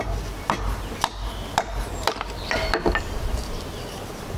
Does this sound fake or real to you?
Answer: real